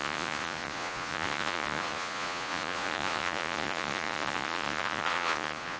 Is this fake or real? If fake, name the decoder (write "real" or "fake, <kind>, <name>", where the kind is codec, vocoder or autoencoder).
fake, vocoder, Vocos